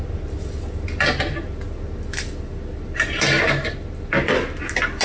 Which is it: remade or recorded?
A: recorded